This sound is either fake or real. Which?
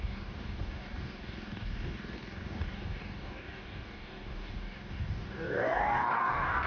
fake